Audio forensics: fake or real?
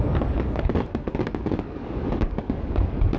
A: fake